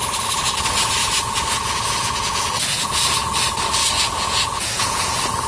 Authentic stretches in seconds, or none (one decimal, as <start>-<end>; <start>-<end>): 0.0-1.0; 3.1-3.8